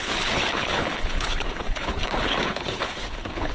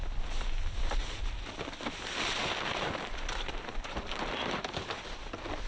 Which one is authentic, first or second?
second